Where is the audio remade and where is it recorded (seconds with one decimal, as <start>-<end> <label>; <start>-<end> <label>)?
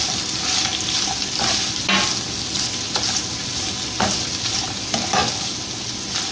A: 0.0-6.3 recorded